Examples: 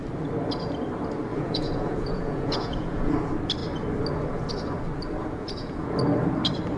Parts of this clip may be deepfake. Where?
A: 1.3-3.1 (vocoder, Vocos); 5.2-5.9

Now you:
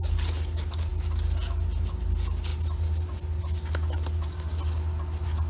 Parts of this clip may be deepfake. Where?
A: none

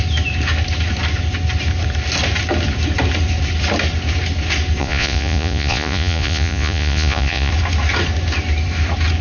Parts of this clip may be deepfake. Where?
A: 4.8-7.5 (vocoder, Vocos)

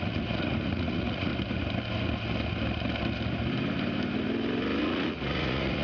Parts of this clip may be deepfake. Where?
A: 0.0-1.3 (vocoder, Vocos); 4.8-5.8

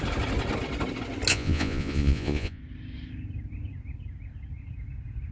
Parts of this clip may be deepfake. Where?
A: 1.3-2.6 (vocoder, Vocos)

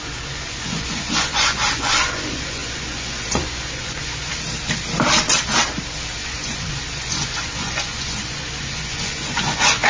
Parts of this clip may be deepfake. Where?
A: 0.0-4.3 (vocoder, Vocos); 6.2-9.9

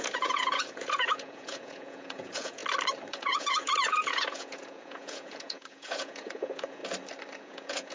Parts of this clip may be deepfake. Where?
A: 0.0-2.6 (vocoder, Vocos); 3.1-6.8; 7.4-7.9